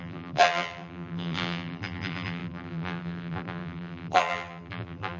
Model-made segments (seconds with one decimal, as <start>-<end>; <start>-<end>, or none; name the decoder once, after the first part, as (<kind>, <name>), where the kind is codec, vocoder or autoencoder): 0.0-5.2 (vocoder, BigVGAN v2)